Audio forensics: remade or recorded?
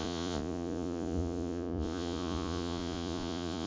remade